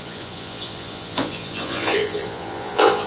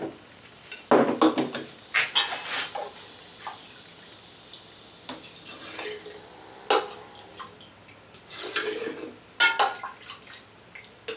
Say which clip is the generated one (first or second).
first